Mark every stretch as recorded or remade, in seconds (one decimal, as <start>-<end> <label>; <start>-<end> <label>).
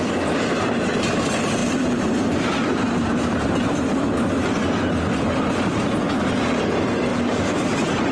0.0-1.6 recorded; 1.6-4.2 remade; 4.2-7.1 recorded; 7.1-8.1 remade